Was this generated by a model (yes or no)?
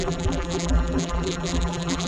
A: yes